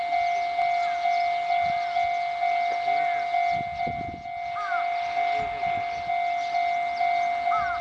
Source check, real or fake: real